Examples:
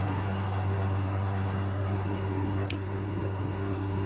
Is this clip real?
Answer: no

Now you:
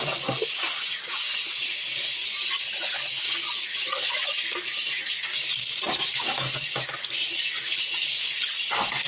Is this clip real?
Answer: yes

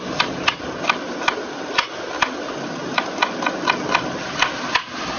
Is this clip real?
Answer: yes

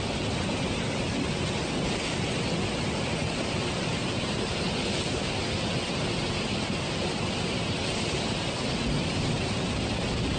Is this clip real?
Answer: yes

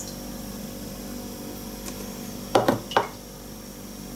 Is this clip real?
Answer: yes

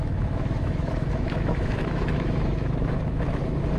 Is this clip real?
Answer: no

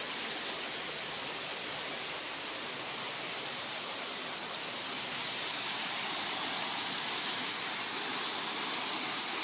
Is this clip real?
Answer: yes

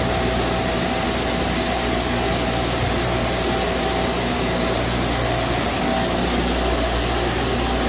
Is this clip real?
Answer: yes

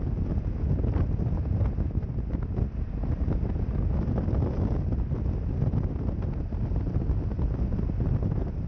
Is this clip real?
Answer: yes